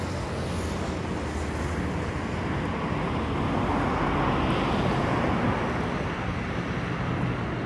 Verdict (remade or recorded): recorded